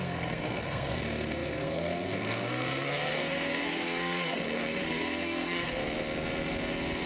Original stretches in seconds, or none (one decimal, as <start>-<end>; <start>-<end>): 5.8-7.1